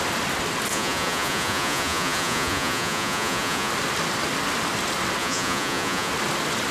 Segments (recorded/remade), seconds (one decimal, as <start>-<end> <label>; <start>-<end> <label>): 0.0-0.7 recorded; 0.7-3.7 remade; 3.7-5.2 recorded; 5.2-6.1 remade; 6.1-6.7 recorded